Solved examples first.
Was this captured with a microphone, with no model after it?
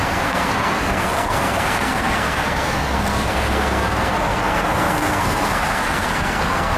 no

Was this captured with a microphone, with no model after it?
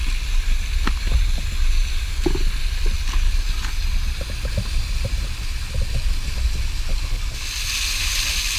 yes